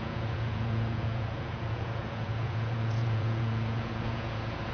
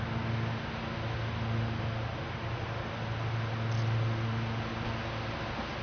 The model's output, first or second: first